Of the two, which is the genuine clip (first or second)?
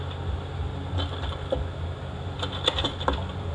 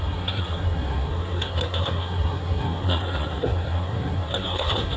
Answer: first